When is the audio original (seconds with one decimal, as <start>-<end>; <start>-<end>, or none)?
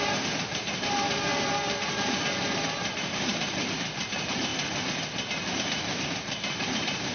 4.5-5.5